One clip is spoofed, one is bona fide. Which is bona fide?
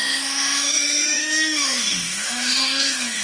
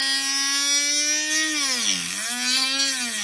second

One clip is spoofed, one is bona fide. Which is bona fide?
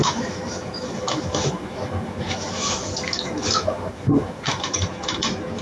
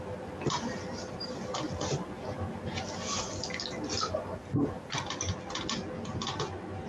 second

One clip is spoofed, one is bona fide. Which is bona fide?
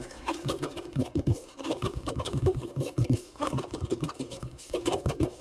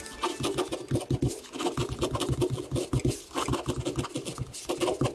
second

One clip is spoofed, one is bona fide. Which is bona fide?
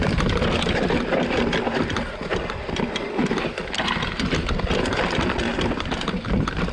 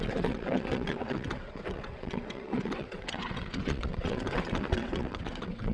first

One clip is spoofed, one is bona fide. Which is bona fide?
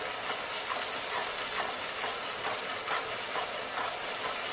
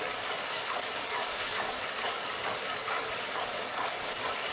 first